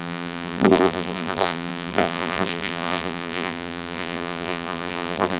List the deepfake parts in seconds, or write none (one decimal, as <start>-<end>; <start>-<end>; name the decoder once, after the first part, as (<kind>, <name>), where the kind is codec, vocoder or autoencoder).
0.0-5.4 (vocoder, BigVGAN v2)